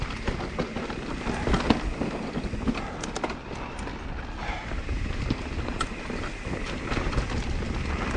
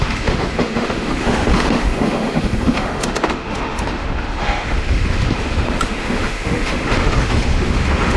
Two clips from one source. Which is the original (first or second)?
first